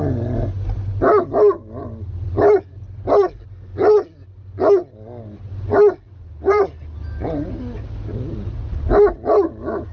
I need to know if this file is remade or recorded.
recorded